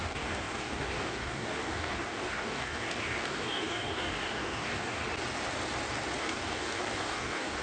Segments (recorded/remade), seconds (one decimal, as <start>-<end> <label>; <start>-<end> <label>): 0.0-5.0 remade; 5.0-6.2 recorded; 6.2-7.6 remade

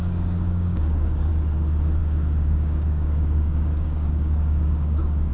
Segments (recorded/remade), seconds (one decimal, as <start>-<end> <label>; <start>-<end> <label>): 0.0-1.3 remade; 1.3-2.0 recorded; 2.0-5.3 remade